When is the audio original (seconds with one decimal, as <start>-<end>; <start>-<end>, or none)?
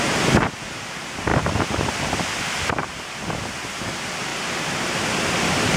0.0-1.3; 3.0-4.3; 5.3-5.8